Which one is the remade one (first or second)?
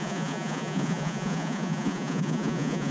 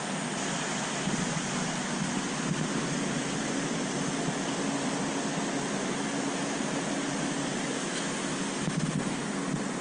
first